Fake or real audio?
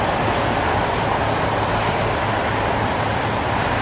real